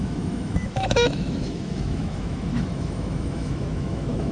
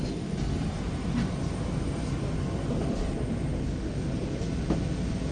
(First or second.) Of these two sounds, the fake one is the first